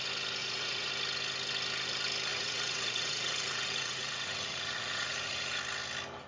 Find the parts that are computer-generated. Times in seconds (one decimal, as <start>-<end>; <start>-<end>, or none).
0.4-0.9; 2.3-5.6